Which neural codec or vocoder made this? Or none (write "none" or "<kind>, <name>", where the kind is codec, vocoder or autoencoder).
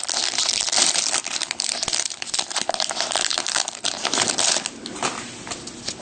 none